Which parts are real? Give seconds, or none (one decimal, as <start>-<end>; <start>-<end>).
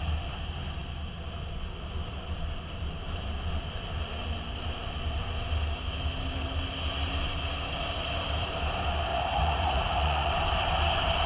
0.0-9.1; 10.3-11.3